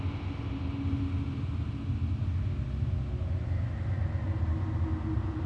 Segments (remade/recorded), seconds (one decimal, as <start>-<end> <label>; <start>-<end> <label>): 0.0-5.5 recorded